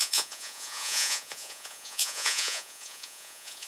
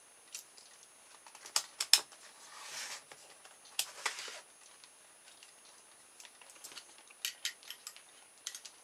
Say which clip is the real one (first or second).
second